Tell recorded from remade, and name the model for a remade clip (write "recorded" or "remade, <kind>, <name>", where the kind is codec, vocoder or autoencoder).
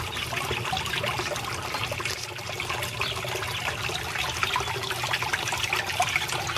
recorded